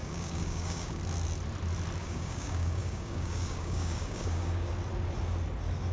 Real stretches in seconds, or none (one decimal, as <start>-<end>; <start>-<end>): 1.0-2.0; 4.7-5.9